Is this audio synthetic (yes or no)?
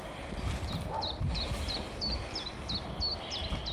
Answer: no